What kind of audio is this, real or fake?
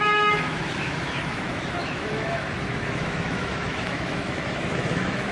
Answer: fake